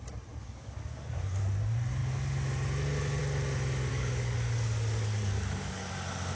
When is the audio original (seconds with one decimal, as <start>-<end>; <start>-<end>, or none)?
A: 0.0-0.4; 1.4-3.9; 5.8-6.4